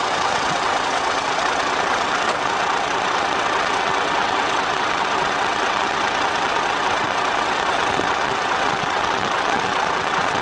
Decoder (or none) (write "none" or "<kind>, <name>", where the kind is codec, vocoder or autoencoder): vocoder, WaveNeXt